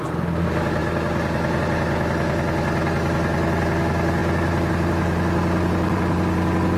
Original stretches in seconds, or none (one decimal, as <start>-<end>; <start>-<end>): 0.0-6.8